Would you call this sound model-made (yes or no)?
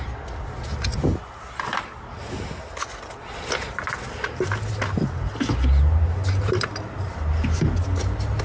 no